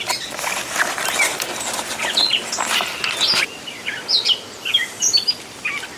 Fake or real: real